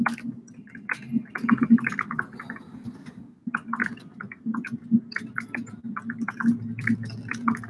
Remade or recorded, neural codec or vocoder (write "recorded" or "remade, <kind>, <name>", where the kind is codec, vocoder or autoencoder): recorded